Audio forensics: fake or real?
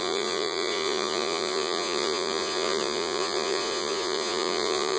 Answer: fake